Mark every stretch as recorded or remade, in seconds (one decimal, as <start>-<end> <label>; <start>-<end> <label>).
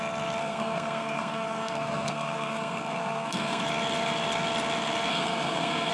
0.0-0.4 recorded; 0.4-3.6 remade; 3.6-5.1 recorded; 5.1-5.9 remade